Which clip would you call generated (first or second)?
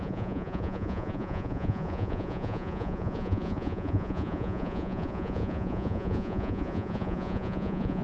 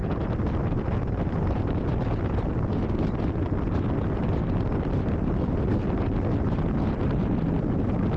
first